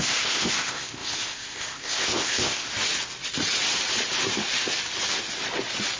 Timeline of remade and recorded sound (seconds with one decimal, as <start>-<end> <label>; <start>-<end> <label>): 0.0-2.7 remade; 2.7-6.0 recorded